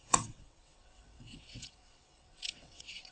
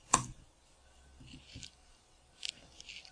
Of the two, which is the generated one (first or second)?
first